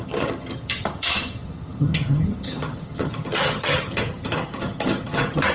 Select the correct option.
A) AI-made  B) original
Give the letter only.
A